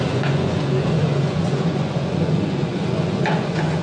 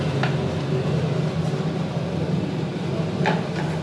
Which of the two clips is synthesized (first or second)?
first